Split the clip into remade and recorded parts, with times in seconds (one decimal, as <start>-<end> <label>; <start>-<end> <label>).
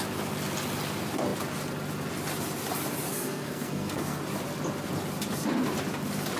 0.0-3.1 recorded; 3.1-4.2 remade; 4.2-6.4 recorded